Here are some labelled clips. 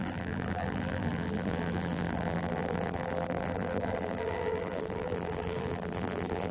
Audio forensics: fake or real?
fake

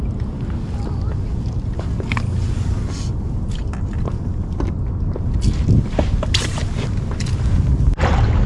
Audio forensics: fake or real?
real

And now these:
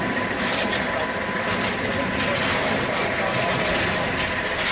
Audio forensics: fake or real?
real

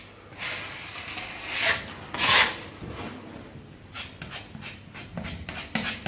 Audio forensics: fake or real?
real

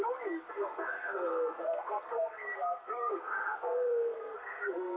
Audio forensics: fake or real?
fake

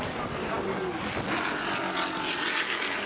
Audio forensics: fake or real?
real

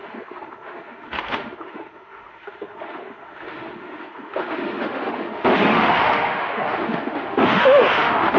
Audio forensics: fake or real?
fake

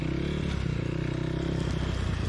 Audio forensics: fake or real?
real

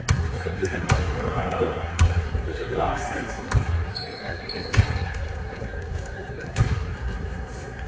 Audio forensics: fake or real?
fake